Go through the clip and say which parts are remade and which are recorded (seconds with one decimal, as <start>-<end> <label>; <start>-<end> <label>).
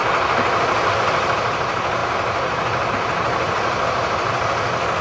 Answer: 0.0-1.1 recorded; 1.1-5.0 remade